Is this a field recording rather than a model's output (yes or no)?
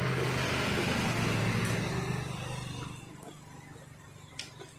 yes